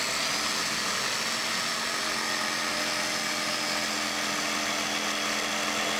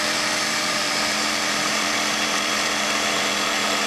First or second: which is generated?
second